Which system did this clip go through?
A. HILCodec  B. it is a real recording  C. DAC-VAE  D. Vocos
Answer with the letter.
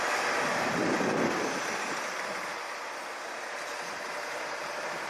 B